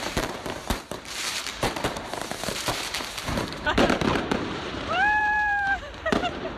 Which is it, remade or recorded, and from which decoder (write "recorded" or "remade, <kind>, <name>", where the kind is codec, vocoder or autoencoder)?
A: remade, vocoder, BigVGAN v2